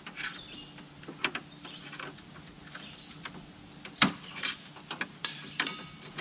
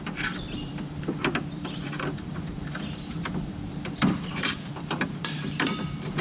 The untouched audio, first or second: first